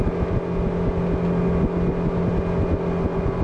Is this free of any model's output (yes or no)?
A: yes